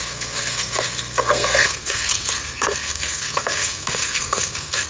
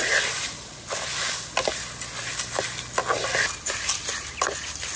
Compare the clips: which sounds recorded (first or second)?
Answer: second